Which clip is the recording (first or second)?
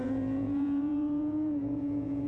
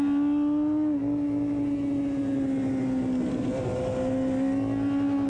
second